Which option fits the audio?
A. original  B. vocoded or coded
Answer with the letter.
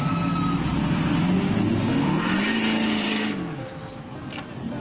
A